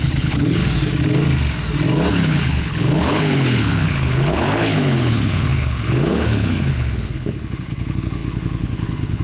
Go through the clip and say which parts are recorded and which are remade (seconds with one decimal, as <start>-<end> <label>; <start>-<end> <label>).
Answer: 0.0-0.6 remade; 0.6-2.1 recorded; 2.1-9.2 remade